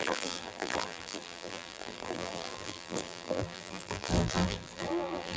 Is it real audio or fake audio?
fake